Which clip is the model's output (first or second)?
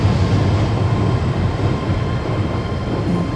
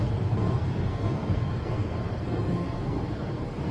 second